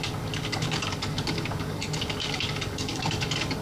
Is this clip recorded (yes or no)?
no